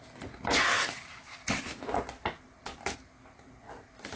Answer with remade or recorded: recorded